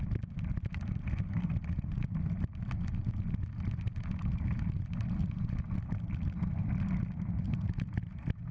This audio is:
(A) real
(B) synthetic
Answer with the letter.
A